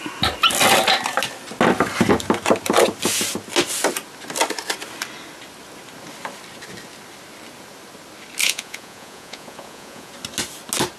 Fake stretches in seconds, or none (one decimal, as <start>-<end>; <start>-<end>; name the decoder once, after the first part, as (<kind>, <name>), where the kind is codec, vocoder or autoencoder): 8.4-10.1 (vocoder, Vocos)